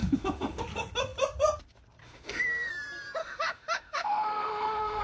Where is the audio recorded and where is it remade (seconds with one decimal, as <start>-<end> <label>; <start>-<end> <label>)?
0.0-0.6 remade; 0.6-2.0 recorded; 2.0-2.7 remade; 2.7-3.2 recorded; 3.2-5.0 remade